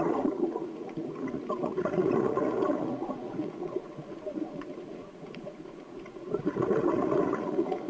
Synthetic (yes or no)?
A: yes